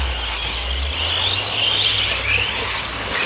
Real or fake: real